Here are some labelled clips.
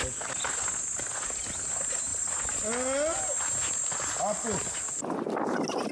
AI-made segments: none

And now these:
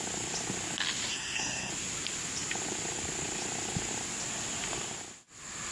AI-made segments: 1.1-1.7 (codec, SNAC)

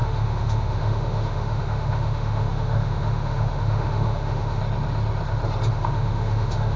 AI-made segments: 0.0-4.6 (autoencoder, DAC-VAE); 5.7-6.8

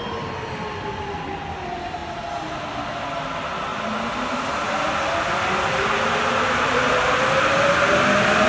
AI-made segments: none

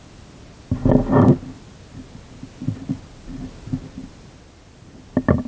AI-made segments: none

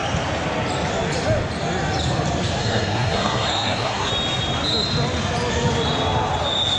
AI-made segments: 2.6-4.1 (codec, SNAC)